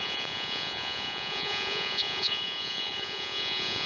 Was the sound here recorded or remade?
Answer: remade